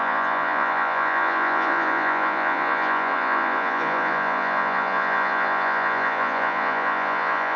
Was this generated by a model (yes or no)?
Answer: yes